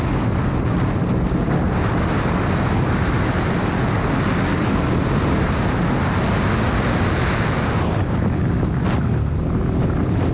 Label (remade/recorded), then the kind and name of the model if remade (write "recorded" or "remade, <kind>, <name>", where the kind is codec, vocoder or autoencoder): recorded